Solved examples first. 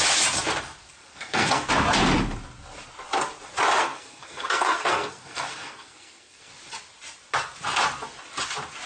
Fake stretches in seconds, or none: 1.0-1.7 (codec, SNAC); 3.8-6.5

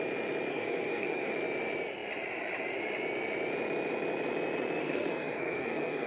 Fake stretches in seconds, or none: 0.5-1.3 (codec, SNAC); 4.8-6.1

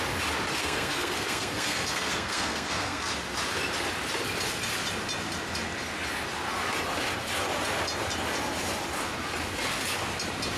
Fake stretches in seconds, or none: 0.6-3.1 (codec, SNAC)

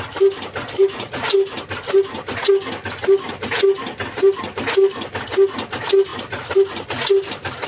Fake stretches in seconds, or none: none

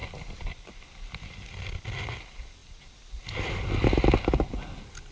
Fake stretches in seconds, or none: none

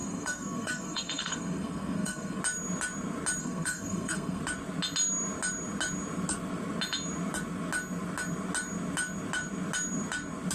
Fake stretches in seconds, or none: 0.0-2.4 (codec, SNAC); 3.4-4.4